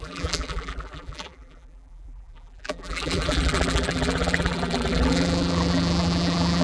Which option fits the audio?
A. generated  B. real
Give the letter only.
A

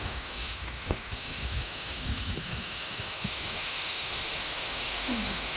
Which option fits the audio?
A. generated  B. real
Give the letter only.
A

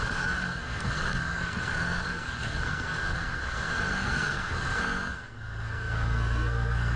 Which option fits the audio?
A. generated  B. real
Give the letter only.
A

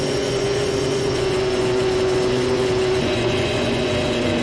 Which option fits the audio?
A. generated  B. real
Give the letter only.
A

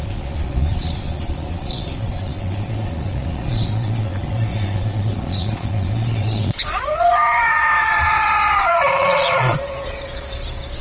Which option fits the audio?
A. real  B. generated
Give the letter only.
B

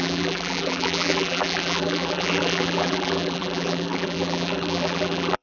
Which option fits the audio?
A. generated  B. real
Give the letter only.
A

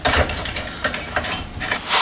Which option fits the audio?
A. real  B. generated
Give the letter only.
A